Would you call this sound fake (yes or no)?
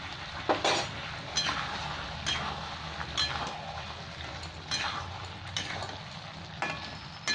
no